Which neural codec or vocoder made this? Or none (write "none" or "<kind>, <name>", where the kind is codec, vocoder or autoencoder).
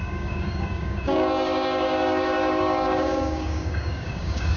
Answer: codec, DAC